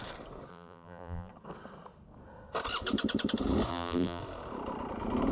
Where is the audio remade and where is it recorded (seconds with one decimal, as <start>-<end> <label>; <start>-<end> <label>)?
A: 0.0-0.5 recorded; 0.5-1.3 remade; 1.3-3.7 recorded; 3.7-4.2 remade; 4.2-5.3 recorded